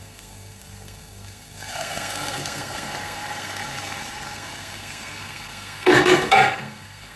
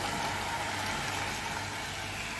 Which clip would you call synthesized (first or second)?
first